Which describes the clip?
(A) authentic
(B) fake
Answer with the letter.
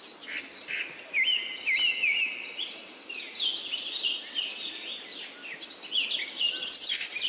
A